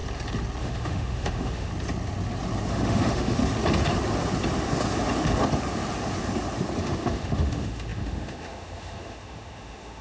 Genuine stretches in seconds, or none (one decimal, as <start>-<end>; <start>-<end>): 0.0-0.6; 1.7-2.7; 3.4-6.8